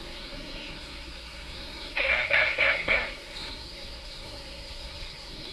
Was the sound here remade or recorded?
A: remade